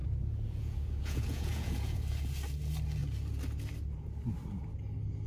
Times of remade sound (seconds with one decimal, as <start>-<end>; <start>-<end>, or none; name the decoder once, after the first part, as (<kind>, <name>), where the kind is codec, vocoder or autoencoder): 0.0-2.0 (vocoder, Vocos)